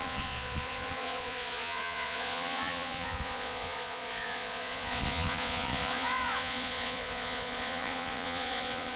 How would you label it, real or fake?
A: fake